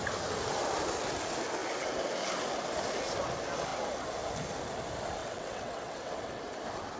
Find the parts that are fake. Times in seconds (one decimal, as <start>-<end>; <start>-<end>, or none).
5.2-6.4